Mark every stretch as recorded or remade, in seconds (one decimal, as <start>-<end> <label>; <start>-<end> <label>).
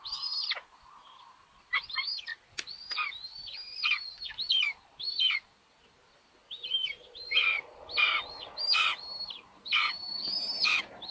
0.0-11.1 recorded